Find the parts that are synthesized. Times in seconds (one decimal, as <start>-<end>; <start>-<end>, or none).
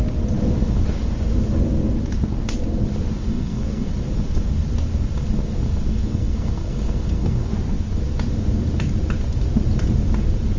3.3-3.9; 5.9-7.5